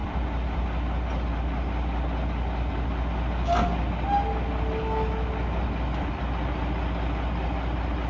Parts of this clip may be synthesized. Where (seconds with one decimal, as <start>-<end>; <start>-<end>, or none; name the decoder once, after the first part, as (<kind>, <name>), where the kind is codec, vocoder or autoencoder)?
0.0-0.6 (vocoder, BigVGAN v2)